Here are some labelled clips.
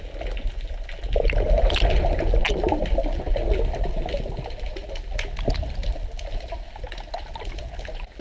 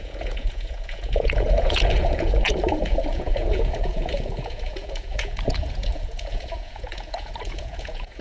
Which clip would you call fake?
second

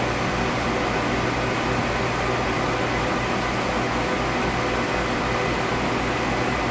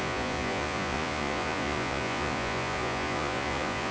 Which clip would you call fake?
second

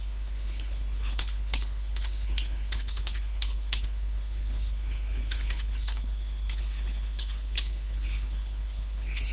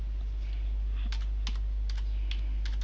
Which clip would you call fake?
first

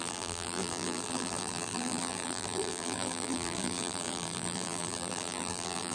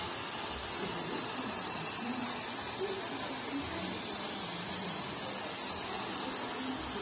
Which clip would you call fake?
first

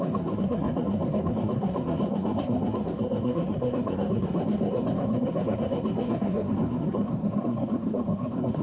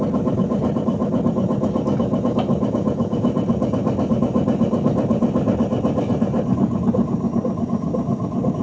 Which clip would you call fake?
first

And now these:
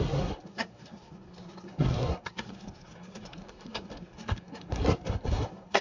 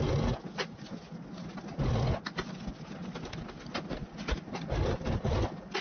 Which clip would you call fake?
first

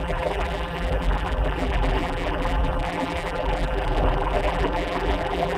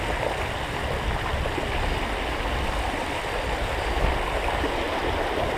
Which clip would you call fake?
first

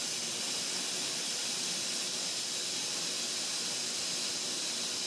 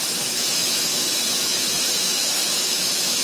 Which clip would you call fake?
second